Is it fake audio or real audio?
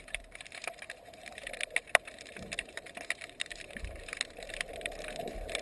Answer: fake